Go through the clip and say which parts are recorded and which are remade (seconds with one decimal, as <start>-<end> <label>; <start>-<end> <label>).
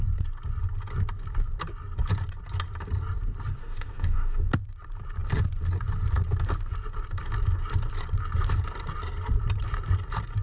0.0-3.6 recorded; 3.6-4.5 remade; 4.5-10.4 recorded